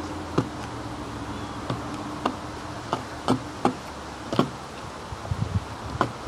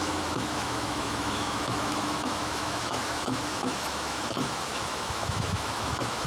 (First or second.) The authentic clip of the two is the first